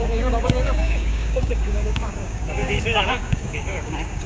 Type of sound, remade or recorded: remade